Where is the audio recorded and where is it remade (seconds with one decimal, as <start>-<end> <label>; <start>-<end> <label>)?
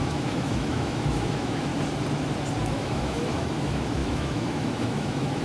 0.0-1.7 remade; 1.7-2.6 recorded; 2.6-5.4 remade